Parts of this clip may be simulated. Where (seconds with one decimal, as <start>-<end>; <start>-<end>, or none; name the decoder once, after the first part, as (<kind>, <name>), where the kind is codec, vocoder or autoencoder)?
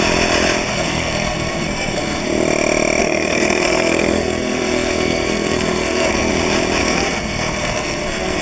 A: 0.7-2.2 (codec, SNAC); 3.0-6.3; 6.8-8.4